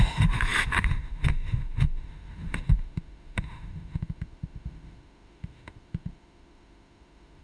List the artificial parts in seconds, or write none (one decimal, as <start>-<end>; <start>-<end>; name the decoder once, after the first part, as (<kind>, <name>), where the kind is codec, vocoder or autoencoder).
0.0-7.4 (autoencoder, DAC-VAE)